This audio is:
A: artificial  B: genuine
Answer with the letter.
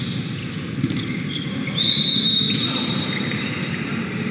B